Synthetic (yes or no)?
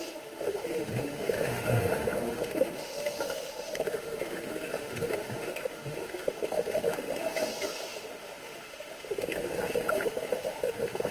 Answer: yes